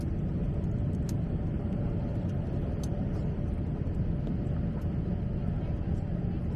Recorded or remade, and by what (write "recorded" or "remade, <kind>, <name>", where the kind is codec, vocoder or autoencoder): recorded